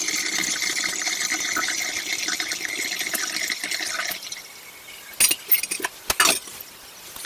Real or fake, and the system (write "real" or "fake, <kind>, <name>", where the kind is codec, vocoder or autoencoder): real